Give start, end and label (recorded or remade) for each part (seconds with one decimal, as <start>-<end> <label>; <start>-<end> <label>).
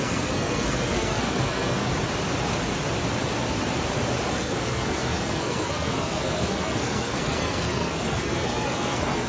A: 0.0-1.9 remade; 1.9-4.3 recorded; 4.3-9.3 remade